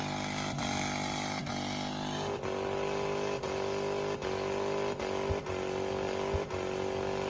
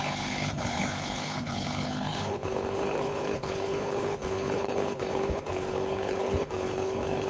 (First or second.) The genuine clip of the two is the first